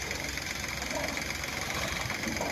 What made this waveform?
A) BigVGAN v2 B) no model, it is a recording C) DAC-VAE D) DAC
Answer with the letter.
B